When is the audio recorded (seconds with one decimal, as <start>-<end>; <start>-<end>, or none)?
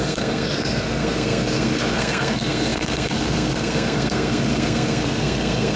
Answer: none